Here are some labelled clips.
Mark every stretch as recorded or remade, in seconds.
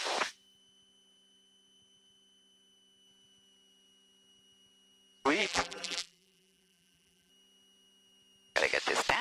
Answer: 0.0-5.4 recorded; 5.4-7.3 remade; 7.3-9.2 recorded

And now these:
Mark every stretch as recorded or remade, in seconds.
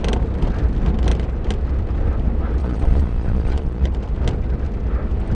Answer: 0.0-2.6 recorded; 2.6-3.9 remade; 3.9-5.3 recorded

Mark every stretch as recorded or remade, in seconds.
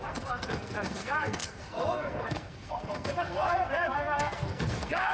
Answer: 0.0-5.1 remade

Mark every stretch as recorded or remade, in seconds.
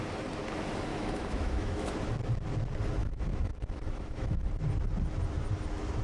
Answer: 0.0-0.9 recorded; 0.9-1.9 remade; 1.9-3.0 recorded; 3.0-4.5 remade; 4.5-6.0 recorded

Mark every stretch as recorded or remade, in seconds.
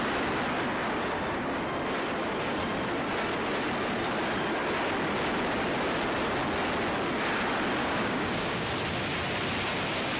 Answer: 0.0-7.8 recorded; 7.8-8.7 remade; 8.7-10.2 recorded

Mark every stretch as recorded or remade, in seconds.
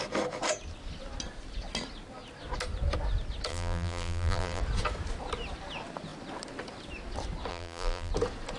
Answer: 0.0-3.5 recorded; 3.5-4.6 remade; 4.6-7.5 recorded; 7.5-8.1 remade; 8.1-8.6 recorded